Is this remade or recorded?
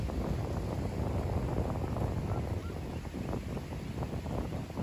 recorded